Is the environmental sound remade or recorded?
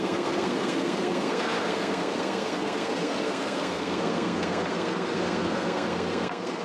remade